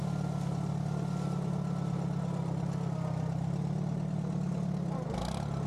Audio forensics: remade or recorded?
recorded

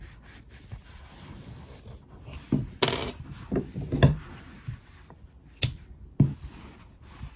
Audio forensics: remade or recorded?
recorded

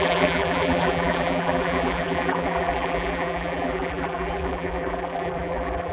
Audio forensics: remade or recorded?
remade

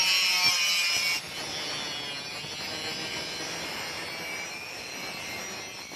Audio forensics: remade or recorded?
recorded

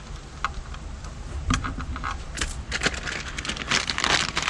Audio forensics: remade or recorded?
remade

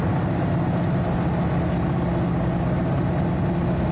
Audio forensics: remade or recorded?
recorded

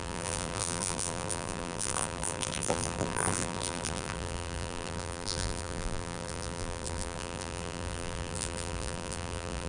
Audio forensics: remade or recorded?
remade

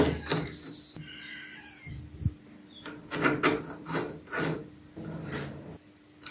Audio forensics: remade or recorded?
recorded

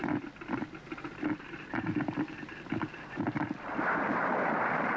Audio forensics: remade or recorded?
remade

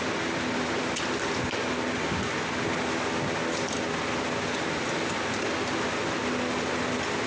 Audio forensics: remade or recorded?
recorded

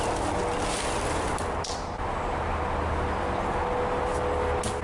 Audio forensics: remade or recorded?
recorded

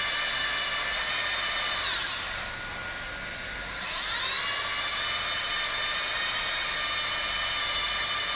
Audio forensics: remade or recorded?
recorded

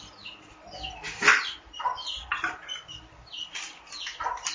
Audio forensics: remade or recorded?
recorded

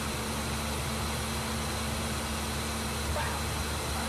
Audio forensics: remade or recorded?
recorded